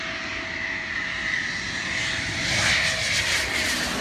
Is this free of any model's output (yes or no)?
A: yes